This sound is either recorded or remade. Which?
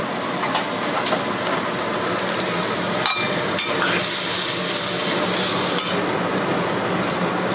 recorded